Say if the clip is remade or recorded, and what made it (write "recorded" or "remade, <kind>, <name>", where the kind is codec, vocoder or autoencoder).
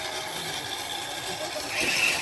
recorded